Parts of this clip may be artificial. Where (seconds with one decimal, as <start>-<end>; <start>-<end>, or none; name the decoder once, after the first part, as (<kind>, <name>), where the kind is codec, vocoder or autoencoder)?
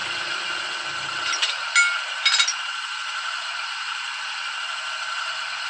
none